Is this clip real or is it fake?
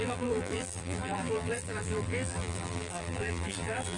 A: fake